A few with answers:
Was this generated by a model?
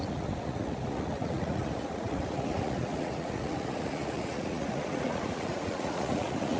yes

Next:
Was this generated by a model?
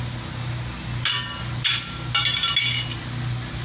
no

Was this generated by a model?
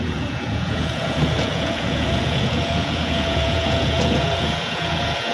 yes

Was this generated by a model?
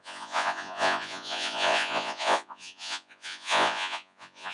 yes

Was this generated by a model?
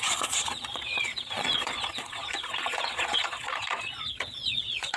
yes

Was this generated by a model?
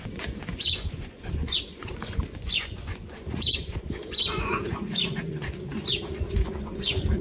yes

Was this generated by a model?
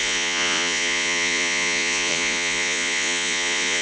yes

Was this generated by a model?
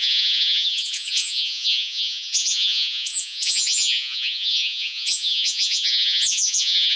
yes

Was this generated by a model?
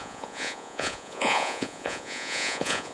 yes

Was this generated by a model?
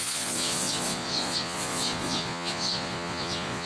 yes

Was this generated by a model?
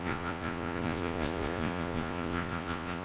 yes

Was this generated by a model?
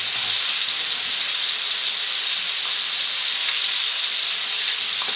no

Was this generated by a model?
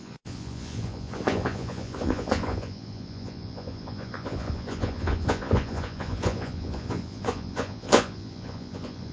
yes